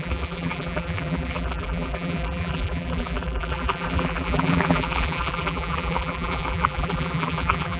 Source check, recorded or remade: remade